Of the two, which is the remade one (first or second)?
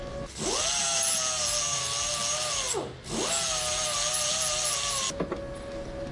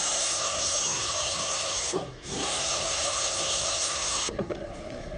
second